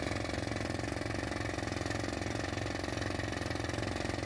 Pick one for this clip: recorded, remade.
recorded